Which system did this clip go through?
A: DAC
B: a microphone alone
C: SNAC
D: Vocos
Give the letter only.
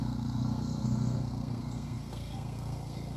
C